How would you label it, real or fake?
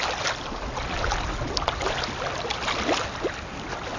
real